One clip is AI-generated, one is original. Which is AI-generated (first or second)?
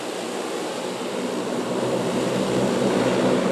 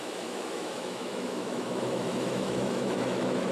second